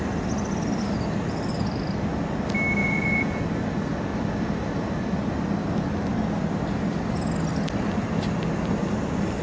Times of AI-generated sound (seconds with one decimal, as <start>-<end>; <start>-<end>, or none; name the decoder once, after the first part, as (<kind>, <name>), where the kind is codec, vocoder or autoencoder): 2.8-3.4 (vocoder, Vocos)